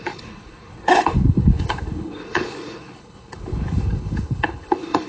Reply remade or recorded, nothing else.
remade